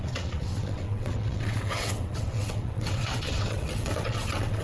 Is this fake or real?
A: fake